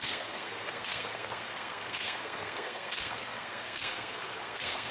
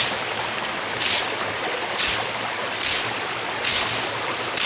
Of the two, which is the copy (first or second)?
first